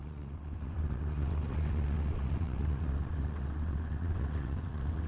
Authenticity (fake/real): fake